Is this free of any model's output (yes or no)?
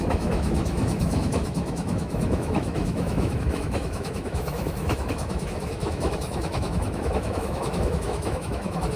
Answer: no